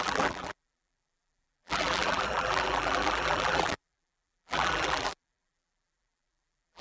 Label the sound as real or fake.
fake